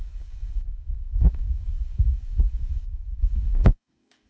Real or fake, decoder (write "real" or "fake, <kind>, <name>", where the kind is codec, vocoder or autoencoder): fake, codec, DAC